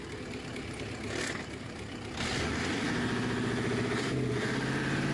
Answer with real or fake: real